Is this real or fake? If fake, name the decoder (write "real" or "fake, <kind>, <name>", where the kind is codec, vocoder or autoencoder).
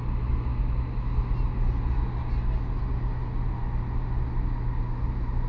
real